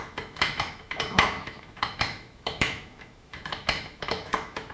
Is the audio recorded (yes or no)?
no